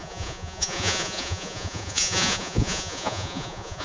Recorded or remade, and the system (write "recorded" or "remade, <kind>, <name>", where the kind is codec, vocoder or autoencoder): remade, vocoder, Vocos